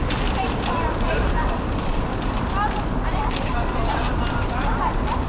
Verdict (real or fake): real